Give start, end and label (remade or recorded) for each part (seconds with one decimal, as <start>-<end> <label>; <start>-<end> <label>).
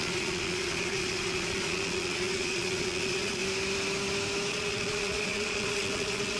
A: 0.0-3.4 remade; 3.4-4.5 recorded; 4.5-6.4 remade